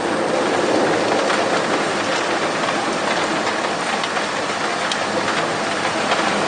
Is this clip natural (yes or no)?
yes